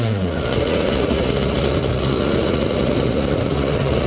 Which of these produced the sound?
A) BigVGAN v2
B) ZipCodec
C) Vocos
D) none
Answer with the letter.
C